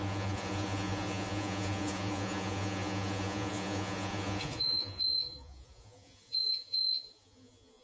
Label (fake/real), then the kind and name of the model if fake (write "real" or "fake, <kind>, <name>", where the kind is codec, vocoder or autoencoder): fake, vocoder, Vocos